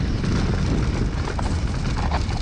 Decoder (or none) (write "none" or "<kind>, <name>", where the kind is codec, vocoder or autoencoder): none